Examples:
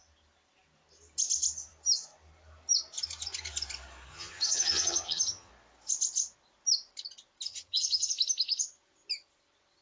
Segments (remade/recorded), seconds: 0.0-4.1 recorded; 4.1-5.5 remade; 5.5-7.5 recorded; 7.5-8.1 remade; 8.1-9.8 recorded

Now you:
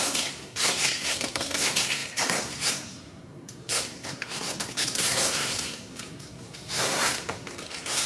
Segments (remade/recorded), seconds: 0.0-8.1 remade